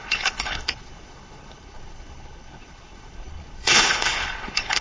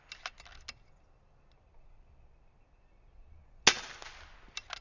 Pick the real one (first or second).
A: second